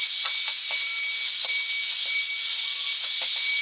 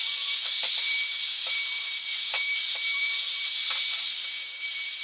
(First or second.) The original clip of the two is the first